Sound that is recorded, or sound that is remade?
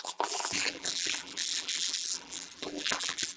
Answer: remade